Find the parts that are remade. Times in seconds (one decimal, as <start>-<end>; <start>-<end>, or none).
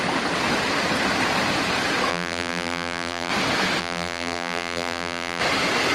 2.1-3.3; 3.8-5.4